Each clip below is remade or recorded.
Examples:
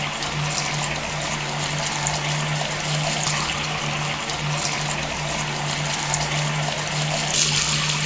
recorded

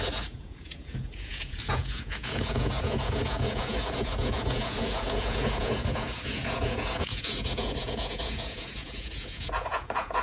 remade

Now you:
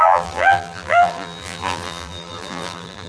remade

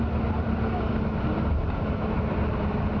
recorded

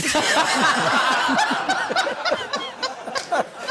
remade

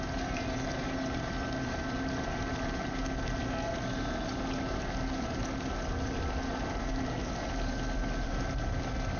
recorded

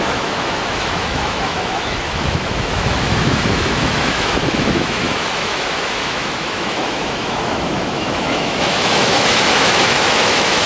remade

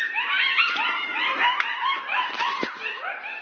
recorded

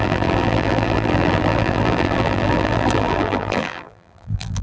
remade